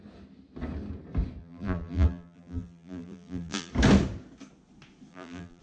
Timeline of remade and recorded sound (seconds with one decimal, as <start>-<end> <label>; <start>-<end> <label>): 0.0-1.4 recorded; 1.4-3.7 remade; 3.7-5.1 recorded; 5.1-5.6 remade

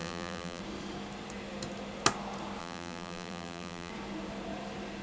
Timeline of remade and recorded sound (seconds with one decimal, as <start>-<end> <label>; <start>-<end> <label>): 0.0-0.6 remade; 0.6-2.6 recorded; 2.6-3.9 remade; 3.9-5.0 recorded

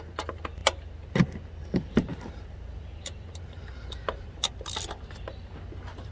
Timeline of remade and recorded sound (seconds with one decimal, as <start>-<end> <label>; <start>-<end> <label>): 0.0-0.6 remade; 0.6-1.6 recorded; 1.6-6.1 remade

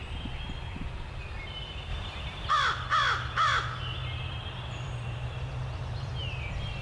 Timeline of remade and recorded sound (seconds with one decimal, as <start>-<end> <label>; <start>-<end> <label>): 0.0-1.9 recorded; 1.9-2.5 remade; 2.5-4.0 recorded; 4.0-6.1 remade; 6.1-6.8 recorded

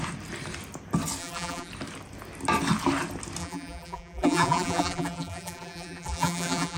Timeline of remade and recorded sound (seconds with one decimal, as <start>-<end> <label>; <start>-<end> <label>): 0.0-1.2 recorded; 1.2-1.7 remade; 1.7-3.4 recorded; 3.4-6.8 remade

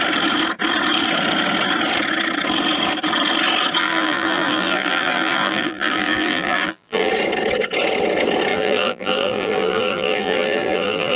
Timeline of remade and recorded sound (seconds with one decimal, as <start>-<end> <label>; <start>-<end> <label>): 0.0-3.8 recorded; 3.8-7.1 remade; 7.1-8.5 recorded; 8.5-11.2 remade

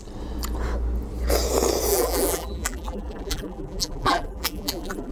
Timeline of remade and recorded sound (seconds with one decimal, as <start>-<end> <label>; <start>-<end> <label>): 0.0-1.9 recorded; 1.9-5.1 remade

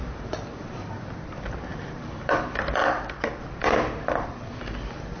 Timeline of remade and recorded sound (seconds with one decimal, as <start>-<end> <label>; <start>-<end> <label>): 0.0-1.0 remade; 1.0-1.7 recorded; 1.7-2.4 remade; 2.4-2.8 recorded; 2.8-3.4 remade; 3.4-5.2 recorded